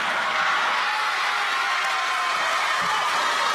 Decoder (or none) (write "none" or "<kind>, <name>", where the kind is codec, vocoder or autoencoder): none